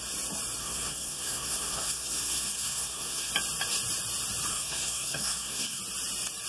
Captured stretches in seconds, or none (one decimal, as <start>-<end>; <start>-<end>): 0.0-0.6; 3.3-4.5; 5.8-6.5